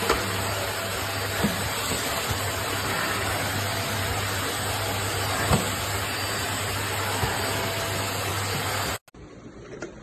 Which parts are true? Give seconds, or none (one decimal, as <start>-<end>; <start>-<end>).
0.0-10.0